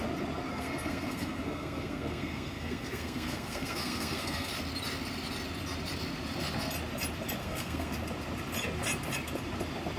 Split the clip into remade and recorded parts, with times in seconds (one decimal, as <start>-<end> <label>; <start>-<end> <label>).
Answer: 0.0-0.5 recorded; 0.5-4.5 remade; 4.5-7.4 recorded; 7.4-7.9 remade; 7.9-10.0 recorded